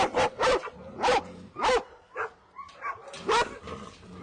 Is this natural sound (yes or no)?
yes